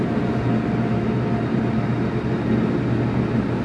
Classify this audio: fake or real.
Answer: real